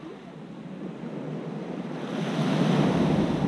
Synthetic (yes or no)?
no